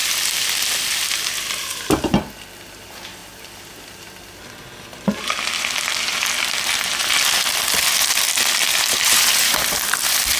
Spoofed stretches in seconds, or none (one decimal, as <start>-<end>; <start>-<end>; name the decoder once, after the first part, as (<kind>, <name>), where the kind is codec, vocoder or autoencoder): 0.9-10.4 (vocoder, BigVGAN v2)